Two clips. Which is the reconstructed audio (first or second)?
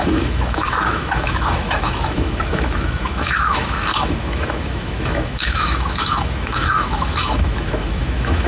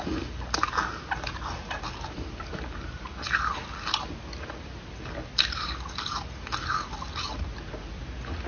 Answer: first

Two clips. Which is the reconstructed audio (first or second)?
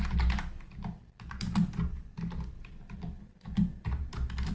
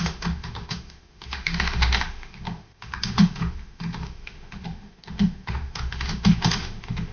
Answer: second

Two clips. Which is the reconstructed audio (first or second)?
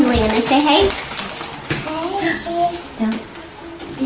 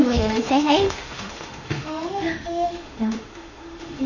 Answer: second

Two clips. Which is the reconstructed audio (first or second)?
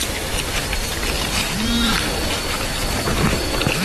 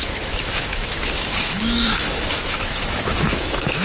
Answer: second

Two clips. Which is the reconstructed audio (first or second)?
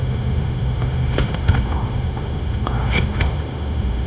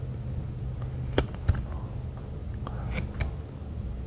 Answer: first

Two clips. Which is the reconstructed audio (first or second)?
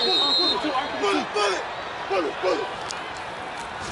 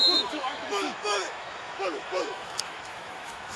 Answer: second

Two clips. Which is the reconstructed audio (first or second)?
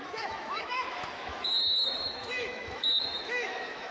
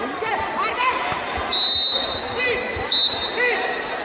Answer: first